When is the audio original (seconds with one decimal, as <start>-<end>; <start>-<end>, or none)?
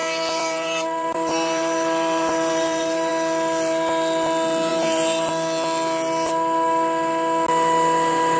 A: 3.1-4.7; 5.3-8.4